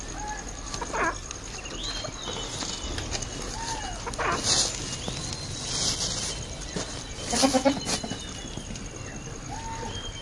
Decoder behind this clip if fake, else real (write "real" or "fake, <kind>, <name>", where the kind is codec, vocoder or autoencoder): real